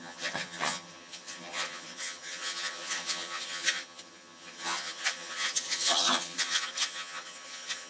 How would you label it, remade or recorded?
remade